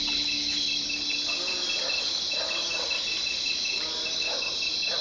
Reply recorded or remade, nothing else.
recorded